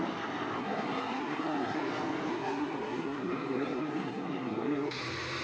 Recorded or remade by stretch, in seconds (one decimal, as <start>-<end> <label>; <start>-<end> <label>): 0.0-0.6 recorded; 0.6-1.9 remade; 1.9-2.3 recorded; 2.3-5.0 remade; 5.0-5.4 recorded